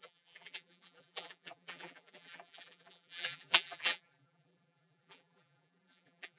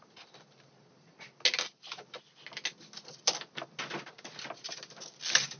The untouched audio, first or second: second